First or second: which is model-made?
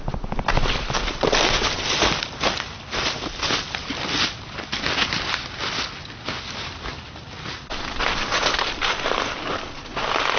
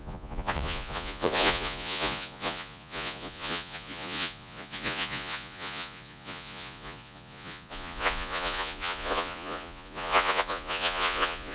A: second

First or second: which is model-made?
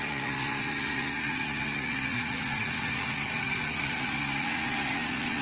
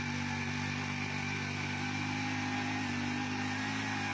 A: first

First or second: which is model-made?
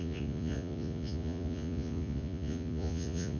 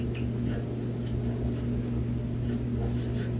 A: first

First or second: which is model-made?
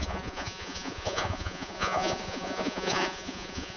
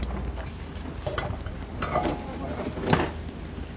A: first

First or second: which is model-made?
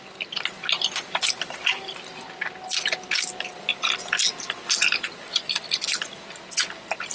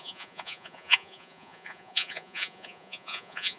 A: second